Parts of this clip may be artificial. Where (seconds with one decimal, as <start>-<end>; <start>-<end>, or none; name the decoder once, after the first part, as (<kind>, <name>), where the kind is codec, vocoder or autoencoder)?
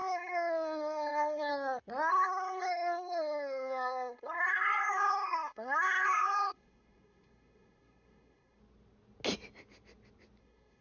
0.0-1.5 (codec, SNAC); 2.1-8.6; 10.4-10.8